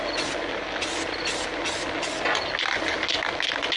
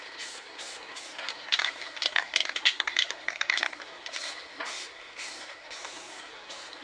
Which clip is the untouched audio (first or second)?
first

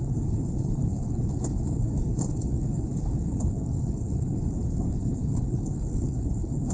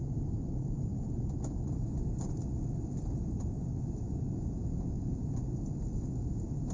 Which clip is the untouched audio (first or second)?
second